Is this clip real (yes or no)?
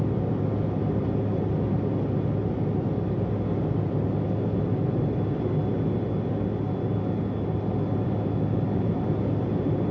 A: yes